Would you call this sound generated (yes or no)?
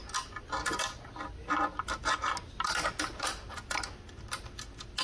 no